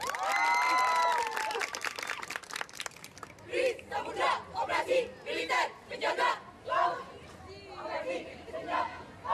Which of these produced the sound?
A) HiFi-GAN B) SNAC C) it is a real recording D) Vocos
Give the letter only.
C